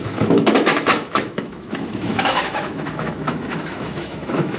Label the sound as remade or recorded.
remade